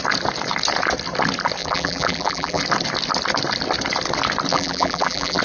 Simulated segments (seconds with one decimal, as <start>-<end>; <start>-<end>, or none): 1.6-2.6; 4.5-5.4